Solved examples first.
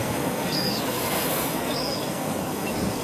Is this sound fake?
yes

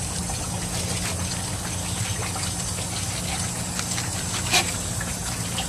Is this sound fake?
no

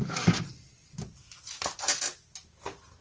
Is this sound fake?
no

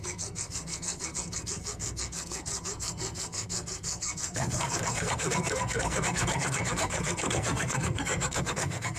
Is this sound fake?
yes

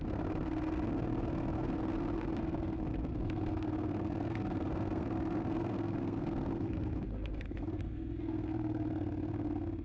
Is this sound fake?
yes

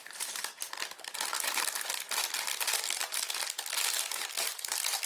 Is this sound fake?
no